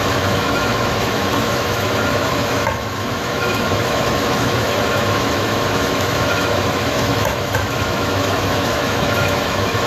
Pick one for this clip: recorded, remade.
remade